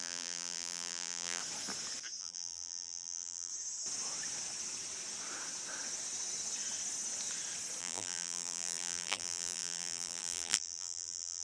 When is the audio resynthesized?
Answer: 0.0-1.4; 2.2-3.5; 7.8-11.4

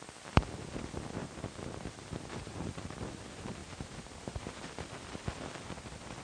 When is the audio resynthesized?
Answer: 1.2-1.9; 3.6-4.8